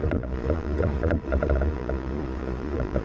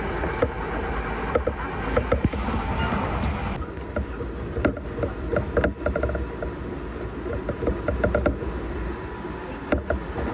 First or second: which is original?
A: second